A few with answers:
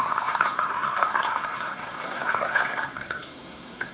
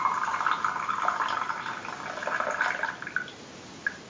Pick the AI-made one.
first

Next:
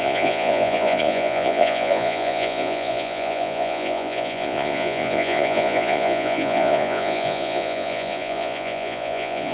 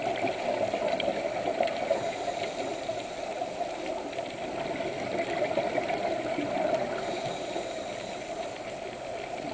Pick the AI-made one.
first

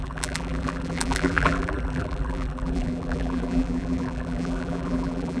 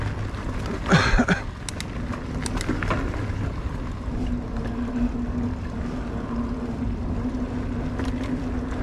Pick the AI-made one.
first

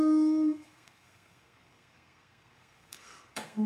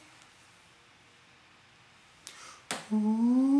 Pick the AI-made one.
first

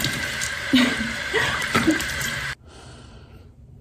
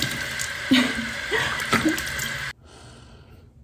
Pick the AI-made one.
first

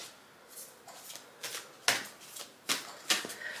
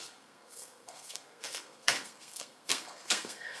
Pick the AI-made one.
second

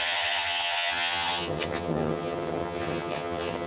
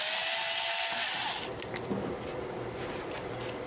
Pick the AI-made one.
first